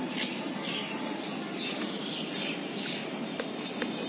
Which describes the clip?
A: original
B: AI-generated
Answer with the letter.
A